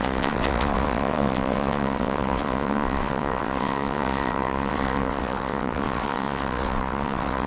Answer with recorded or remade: remade